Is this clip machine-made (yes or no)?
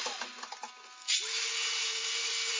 no